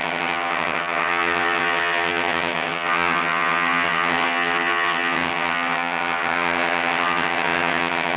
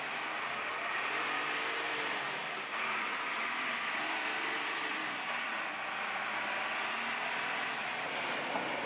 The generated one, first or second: first